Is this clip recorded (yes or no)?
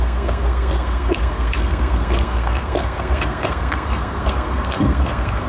no